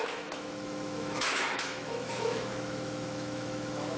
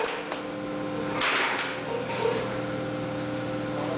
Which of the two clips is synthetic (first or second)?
first